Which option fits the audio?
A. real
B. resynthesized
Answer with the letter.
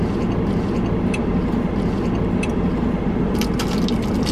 A